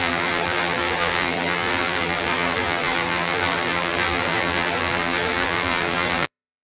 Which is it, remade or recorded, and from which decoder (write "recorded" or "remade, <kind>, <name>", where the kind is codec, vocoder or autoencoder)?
remade, vocoder, BigVGAN v2